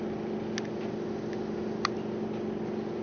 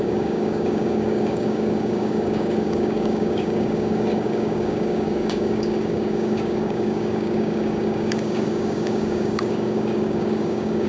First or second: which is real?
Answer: first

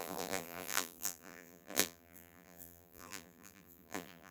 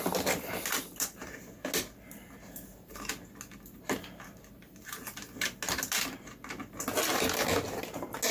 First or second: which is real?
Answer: second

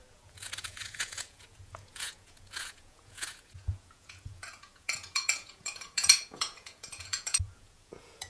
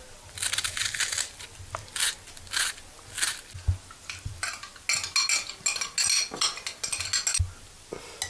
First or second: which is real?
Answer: second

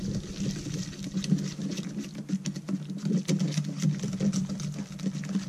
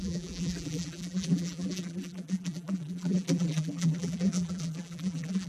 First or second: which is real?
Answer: first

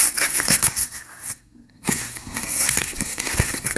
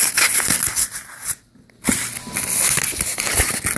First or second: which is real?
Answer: second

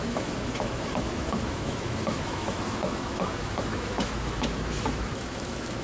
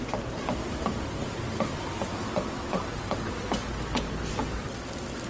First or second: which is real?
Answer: second